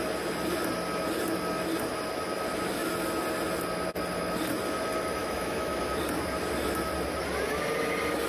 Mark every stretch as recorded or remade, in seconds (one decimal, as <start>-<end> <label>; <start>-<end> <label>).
0.0-5.2 recorded; 5.2-5.8 remade; 5.8-8.3 recorded